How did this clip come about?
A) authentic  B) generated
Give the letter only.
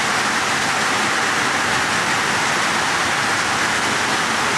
A